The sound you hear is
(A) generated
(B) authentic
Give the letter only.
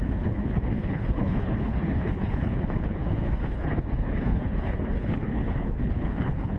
A